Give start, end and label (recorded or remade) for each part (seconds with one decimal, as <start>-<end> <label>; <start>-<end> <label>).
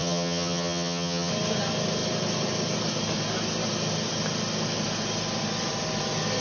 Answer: 0.0-1.3 remade; 1.3-6.4 recorded